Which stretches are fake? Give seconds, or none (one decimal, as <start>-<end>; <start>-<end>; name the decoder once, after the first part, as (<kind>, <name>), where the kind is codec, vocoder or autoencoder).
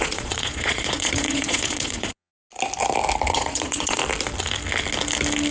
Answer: 0.0-2.3 (vocoder, Vocos); 3.3-4.0